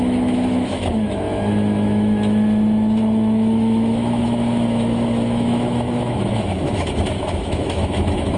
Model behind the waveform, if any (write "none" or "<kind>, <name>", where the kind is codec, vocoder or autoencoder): autoencoder, DAC-VAE